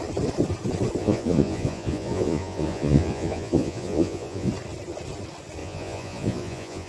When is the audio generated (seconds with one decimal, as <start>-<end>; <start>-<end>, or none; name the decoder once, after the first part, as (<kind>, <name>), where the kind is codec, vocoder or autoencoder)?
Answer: 1.0-4.5 (vocoder, Vocos); 5.6-6.9